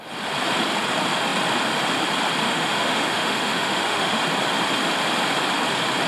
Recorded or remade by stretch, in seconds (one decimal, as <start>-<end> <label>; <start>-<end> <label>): 0.0-2.4 recorded; 2.4-4.2 remade; 4.2-6.1 recorded